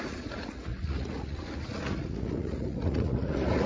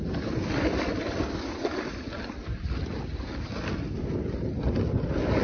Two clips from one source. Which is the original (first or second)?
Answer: second